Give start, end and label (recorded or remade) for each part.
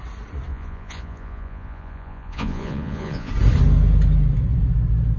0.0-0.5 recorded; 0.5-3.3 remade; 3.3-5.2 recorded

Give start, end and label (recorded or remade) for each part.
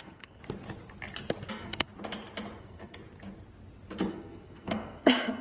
0.0-0.4 remade; 0.4-1.5 recorded; 1.5-1.9 remade; 1.9-2.6 recorded; 2.6-3.0 remade; 3.0-4.1 recorded; 4.1-5.4 remade